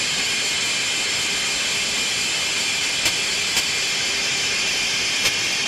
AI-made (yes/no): no